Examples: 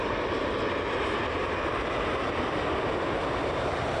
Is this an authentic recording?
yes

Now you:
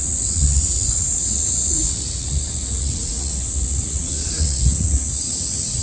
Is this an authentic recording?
no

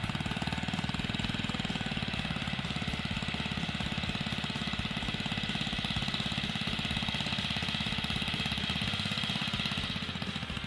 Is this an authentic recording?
yes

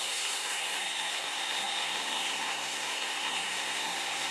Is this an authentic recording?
no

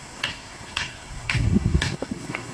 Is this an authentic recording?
no